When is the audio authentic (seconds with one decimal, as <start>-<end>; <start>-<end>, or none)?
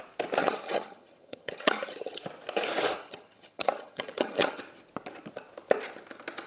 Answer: 0.0-0.4; 2.2-3.0; 4.6-6.5